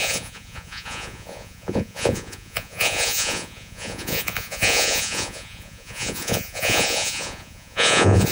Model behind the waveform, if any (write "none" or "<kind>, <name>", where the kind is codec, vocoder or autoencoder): vocoder, Vocos